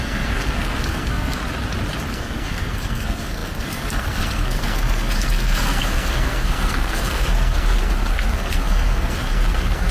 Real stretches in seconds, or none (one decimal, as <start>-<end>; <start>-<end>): 1.4-2.1